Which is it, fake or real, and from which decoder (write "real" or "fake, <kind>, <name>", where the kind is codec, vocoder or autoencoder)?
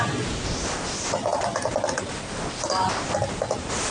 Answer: real